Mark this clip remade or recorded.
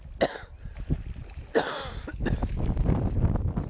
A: recorded